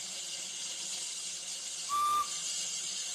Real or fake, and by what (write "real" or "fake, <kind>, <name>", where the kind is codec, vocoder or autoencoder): real